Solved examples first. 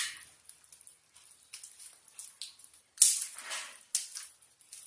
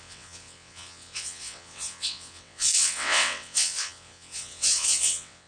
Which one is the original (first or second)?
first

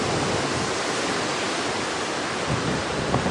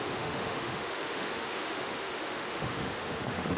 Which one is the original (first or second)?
first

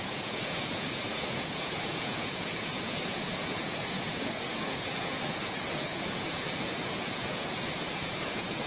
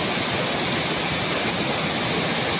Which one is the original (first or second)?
second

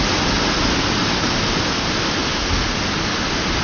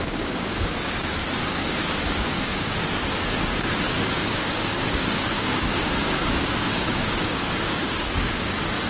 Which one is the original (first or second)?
first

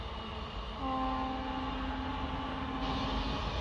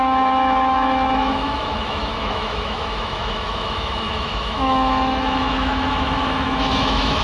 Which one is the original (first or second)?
first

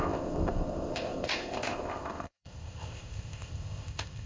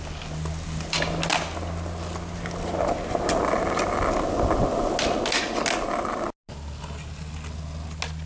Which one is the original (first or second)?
second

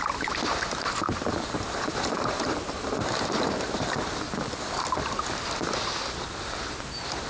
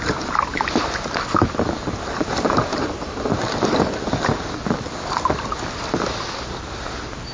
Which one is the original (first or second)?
second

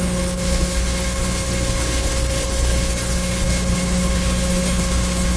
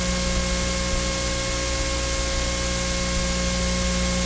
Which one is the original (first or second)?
second